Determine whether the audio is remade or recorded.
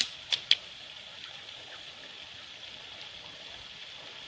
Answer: recorded